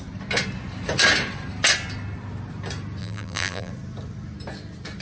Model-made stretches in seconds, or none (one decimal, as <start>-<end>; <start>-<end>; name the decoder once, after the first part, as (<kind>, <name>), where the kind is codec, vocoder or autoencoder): 3.0-3.7 (vocoder, BigVGAN v2)